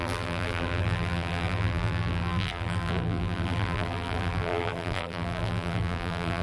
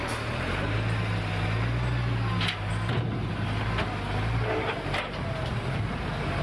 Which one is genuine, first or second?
second